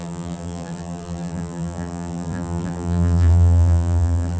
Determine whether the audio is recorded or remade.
remade